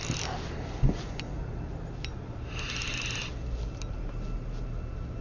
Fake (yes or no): no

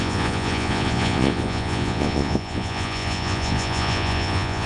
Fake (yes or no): yes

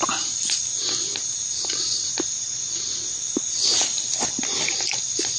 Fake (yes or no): no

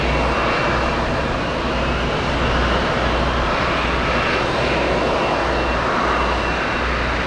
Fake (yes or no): no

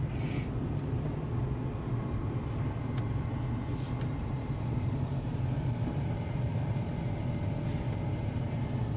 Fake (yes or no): no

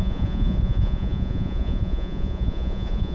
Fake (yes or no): yes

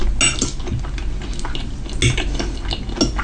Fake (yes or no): no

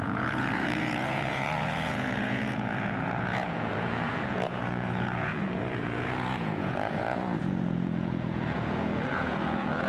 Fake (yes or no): yes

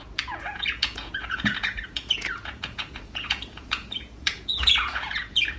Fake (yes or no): yes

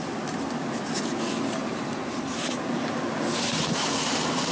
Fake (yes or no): no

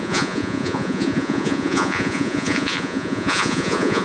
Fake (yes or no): yes